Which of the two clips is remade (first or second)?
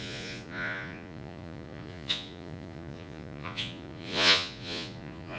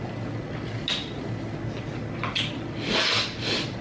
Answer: first